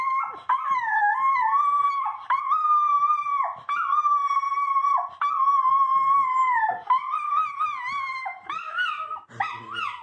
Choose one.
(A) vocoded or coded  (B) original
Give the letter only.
B